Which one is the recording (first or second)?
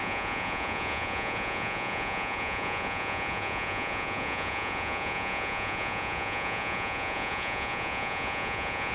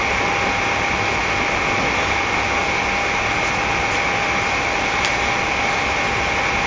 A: second